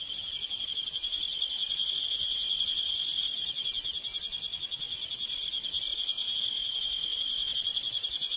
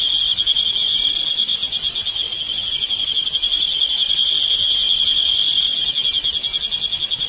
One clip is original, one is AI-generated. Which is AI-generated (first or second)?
first